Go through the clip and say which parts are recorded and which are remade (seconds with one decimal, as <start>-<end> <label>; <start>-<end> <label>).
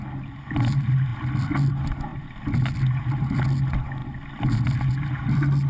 0.0-5.7 recorded